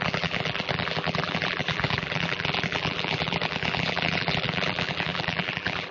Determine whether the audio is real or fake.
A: fake